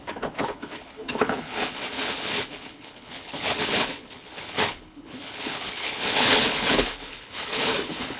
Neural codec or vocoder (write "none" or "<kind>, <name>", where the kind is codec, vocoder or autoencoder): codec, HILCodec